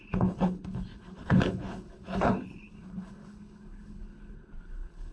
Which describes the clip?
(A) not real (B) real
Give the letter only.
A